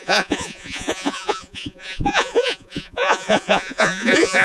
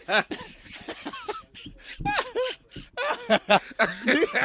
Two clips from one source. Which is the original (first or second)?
second